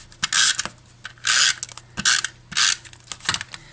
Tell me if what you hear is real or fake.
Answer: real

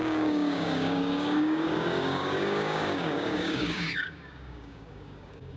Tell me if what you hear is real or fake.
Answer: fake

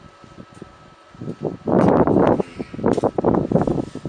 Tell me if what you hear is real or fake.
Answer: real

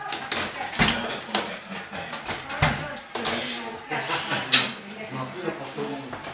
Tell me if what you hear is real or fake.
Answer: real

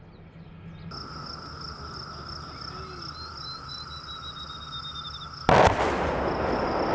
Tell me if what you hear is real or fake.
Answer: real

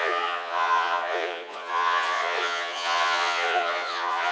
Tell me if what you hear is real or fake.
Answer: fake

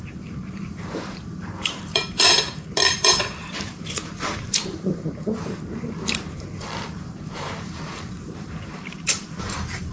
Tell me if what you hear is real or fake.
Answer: fake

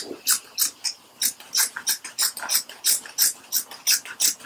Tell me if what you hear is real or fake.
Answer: real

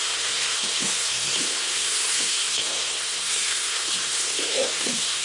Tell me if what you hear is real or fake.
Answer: fake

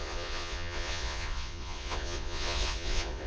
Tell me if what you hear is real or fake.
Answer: fake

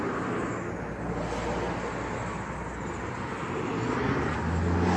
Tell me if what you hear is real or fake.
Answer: real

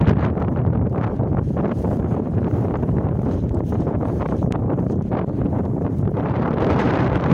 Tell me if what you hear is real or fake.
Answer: fake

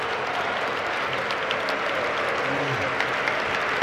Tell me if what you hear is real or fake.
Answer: real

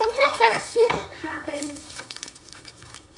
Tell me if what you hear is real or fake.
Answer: fake